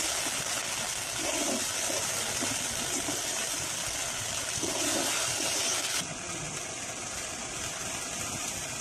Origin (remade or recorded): recorded